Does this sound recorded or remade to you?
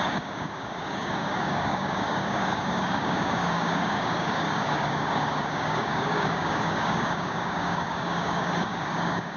remade